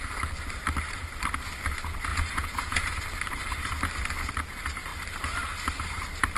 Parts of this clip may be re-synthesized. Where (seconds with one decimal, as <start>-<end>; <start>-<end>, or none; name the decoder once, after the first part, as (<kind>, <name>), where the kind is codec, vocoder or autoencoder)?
2.1-3.0 (vocoder, Vocos)